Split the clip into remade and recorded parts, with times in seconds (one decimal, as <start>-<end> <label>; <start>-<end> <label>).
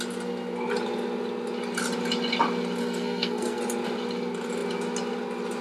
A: 0.0-2.8 recorded; 2.8-3.6 remade; 3.6-5.6 recorded